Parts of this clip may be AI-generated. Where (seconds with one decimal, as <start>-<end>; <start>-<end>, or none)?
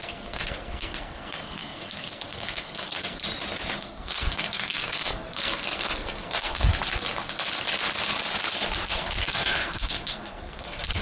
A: 0.0-3.2; 3.8-6.7; 8.8-11.0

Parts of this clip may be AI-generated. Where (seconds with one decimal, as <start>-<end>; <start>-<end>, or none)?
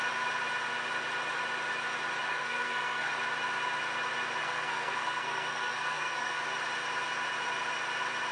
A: 2.3-3.1; 4.4-6.4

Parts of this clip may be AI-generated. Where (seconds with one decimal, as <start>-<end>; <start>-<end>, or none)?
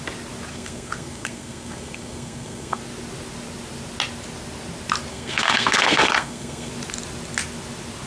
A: 0.5-2.8; 5.1-6.7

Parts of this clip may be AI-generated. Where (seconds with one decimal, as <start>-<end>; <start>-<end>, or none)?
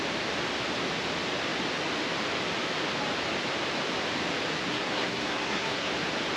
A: 4.6-5.9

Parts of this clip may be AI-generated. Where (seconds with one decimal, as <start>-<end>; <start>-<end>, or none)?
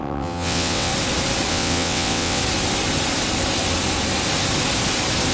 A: 0.0-0.9; 1.5-2.4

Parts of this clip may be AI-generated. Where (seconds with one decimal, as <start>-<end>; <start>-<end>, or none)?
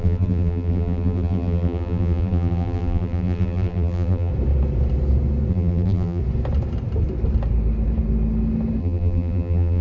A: 0.0-4.3; 5.5-6.2; 8.8-9.8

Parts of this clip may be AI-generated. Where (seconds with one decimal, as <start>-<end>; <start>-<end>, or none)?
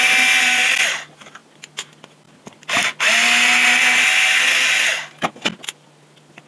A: none